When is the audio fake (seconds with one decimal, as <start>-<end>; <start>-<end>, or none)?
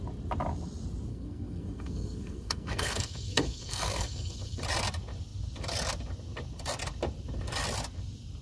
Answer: 1.1-4.6